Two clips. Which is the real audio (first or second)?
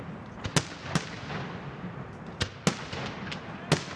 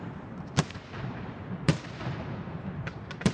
first